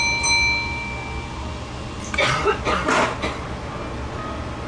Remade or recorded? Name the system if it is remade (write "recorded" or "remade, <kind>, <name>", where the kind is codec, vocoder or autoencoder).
recorded